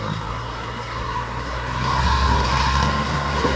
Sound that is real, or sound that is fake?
fake